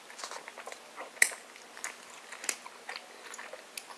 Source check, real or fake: real